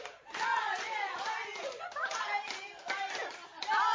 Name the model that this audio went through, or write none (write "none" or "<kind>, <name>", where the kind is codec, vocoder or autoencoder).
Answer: vocoder, BigVGAN v2